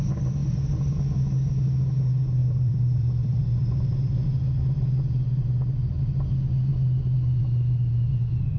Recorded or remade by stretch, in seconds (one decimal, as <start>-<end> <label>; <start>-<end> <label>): 0.0-0.4 recorded; 0.4-1.0 remade; 1.0-2.4 recorded; 2.4-3.4 remade; 3.4-8.6 recorded